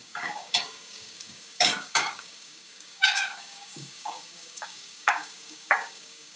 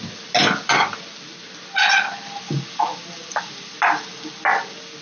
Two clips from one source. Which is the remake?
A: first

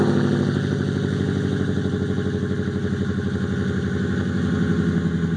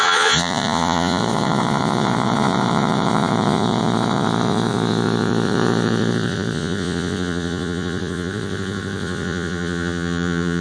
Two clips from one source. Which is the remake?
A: second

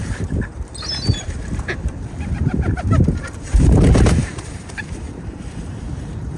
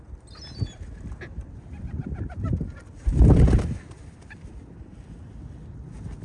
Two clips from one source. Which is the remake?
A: first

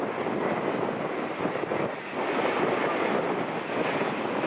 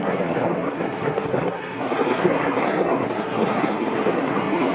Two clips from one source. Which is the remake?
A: second